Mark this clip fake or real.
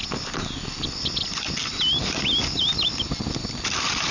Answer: real